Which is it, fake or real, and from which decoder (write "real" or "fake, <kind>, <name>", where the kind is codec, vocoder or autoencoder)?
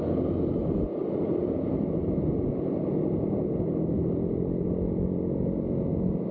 real